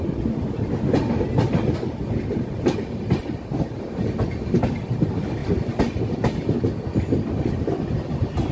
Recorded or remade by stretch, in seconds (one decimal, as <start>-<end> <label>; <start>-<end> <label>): 0.0-8.5 recorded